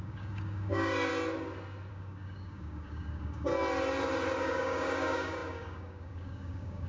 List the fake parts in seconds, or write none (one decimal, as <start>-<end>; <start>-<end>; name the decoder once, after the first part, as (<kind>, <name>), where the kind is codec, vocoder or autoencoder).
0.0-1.1 (codec, DAC); 1.9-3.5; 4.4-6.9